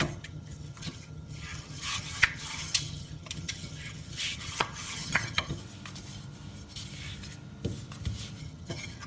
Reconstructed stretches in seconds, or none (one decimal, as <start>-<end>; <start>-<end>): 0.0-5.6; 8.4-9.1